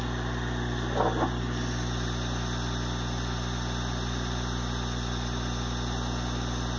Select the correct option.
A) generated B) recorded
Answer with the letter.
B